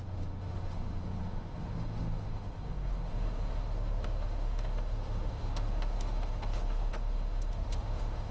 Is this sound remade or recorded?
remade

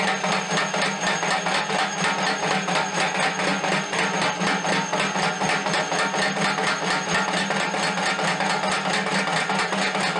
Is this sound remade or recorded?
recorded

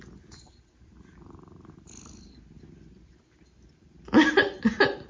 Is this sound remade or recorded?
recorded